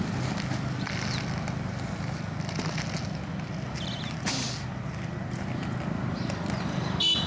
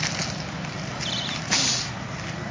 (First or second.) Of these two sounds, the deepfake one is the second